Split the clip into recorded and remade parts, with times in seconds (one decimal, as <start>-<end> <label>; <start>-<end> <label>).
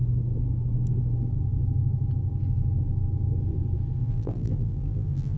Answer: 0.0-4.0 recorded; 4.0-5.4 remade